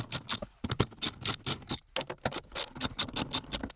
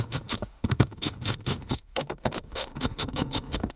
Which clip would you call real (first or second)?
first